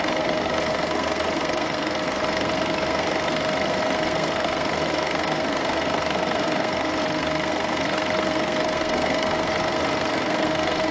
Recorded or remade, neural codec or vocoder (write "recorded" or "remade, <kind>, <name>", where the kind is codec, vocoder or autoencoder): remade, codec, SNAC